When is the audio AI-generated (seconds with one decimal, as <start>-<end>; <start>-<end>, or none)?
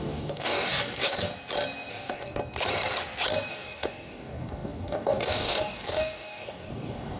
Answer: 0.0-1.3; 1.9-2.4; 3.5-7.2